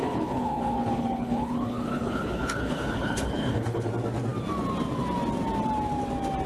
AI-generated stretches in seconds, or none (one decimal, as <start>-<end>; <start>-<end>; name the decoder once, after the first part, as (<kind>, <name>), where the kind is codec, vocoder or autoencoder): 0.0-3.9 (codec, HILCodec)